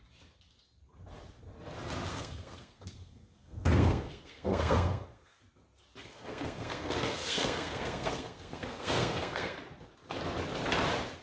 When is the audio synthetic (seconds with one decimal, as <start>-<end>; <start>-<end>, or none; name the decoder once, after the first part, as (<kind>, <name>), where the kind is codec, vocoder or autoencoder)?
2.1-5.4 (codec, SNAC); 6.0-9.6